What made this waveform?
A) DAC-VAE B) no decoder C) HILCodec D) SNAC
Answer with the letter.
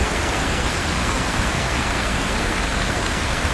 D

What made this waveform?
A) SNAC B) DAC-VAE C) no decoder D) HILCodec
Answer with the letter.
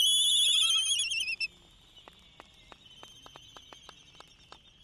C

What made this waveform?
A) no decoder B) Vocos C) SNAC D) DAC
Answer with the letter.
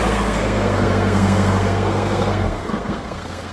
C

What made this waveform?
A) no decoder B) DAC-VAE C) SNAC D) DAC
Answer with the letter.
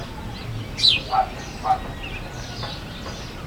A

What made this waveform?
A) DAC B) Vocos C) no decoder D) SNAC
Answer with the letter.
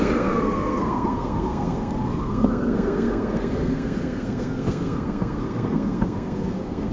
D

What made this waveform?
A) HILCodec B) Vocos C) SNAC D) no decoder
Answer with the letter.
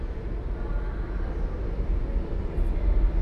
D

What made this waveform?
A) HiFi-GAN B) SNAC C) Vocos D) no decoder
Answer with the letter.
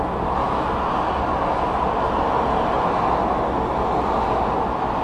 D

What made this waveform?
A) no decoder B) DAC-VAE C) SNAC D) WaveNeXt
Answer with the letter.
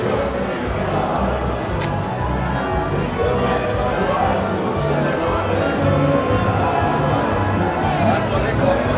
A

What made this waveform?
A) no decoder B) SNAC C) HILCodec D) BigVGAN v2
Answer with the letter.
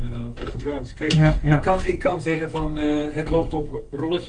B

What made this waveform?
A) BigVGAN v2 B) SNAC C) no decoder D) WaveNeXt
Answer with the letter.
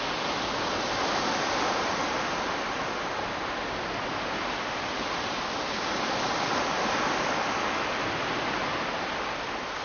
C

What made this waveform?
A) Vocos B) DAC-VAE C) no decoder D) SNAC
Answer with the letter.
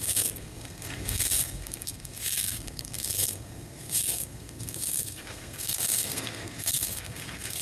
D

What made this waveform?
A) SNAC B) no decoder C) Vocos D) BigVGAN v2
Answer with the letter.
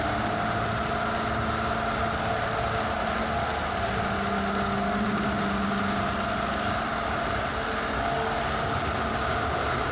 B